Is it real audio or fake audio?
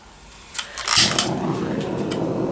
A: real